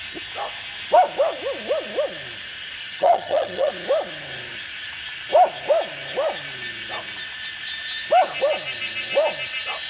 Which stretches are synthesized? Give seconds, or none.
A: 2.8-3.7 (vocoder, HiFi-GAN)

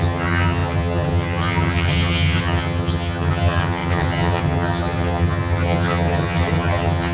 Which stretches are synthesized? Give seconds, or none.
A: 0.0-7.1 (vocoder, HiFi-GAN)

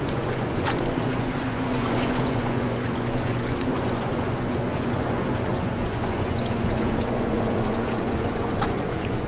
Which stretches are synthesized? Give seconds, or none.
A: 0.0-9.3 (vocoder, Vocos)

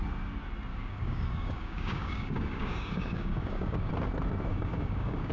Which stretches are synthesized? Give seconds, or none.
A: 0.7-3.9 (codec, DAC); 4.5-5.3